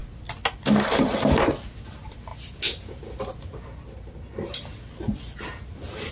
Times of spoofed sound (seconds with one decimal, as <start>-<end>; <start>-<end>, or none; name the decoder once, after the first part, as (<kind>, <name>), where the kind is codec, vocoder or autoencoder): none

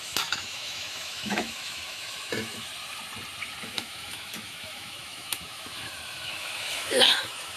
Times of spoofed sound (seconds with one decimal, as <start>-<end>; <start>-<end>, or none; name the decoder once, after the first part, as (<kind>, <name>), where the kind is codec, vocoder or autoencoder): 0.0-2.7 (autoencoder, DAC-VAE); 3.6-7.6

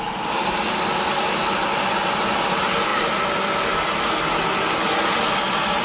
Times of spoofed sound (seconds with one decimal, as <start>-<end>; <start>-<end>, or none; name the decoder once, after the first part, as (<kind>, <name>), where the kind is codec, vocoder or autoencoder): none

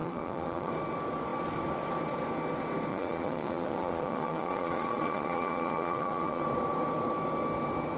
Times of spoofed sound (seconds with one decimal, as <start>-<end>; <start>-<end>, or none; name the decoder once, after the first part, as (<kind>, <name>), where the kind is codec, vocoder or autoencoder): 0.0-0.7 (vocoder, Vocos); 2.9-6.4

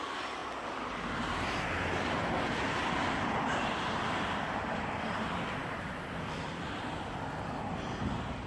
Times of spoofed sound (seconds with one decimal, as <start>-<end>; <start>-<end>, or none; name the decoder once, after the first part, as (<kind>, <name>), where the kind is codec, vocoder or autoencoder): none

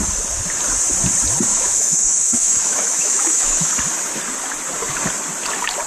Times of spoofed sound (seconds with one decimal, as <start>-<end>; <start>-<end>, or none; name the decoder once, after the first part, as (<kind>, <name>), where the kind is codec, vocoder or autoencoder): 1.5-3.7 (autoencoder, DAC-VAE)

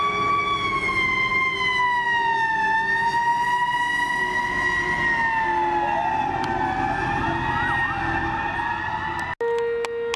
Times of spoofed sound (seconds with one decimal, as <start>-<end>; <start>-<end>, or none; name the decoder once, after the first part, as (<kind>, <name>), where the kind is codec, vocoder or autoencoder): none

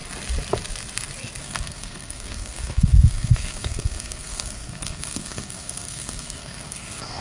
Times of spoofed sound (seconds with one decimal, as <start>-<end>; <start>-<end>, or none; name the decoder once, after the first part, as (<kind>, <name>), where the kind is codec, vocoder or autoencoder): 1.4-7.2 (codec, SNAC)